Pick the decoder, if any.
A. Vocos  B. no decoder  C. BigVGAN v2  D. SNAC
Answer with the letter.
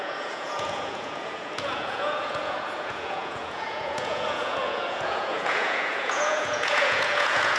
A